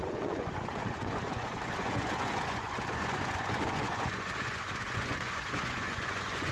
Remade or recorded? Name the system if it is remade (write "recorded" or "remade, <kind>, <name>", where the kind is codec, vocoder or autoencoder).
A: remade, vocoder, Vocos